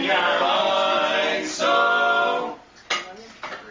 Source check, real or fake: real